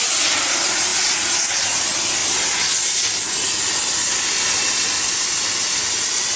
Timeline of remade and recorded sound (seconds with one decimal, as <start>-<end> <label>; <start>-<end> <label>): 0.0-6.4 recorded